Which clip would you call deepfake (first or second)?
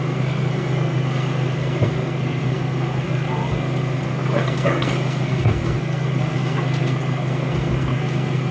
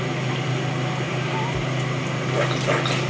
first